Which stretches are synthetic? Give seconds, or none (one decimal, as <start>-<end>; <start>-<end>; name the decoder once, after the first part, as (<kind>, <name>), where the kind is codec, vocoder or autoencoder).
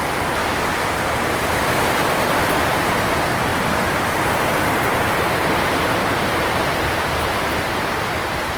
0.4-1.3 (vocoder, BigVGAN v2); 6.0-6.6